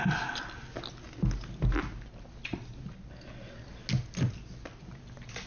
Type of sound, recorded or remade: recorded